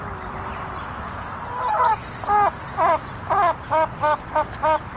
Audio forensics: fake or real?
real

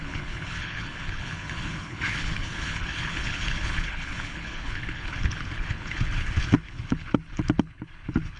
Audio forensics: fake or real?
fake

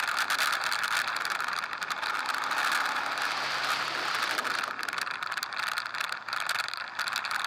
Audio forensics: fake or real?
real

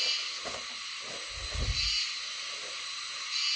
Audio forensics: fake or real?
real